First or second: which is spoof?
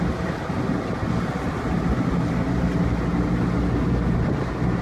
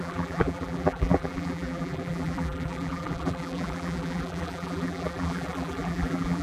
second